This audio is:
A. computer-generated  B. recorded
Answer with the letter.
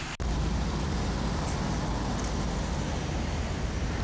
B